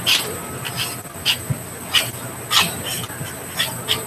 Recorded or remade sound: recorded